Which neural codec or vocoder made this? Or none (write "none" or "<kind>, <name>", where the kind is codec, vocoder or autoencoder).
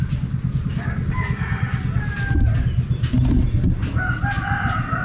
none